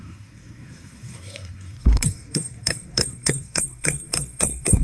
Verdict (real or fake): fake